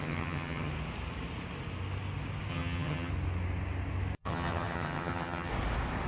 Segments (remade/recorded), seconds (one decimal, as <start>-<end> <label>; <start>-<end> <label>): 0.0-0.7 remade; 0.7-2.5 recorded; 2.5-3.1 remade; 3.1-4.2 recorded; 4.2-5.5 remade; 5.5-6.1 recorded